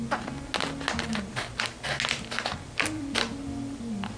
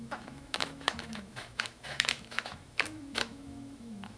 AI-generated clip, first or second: second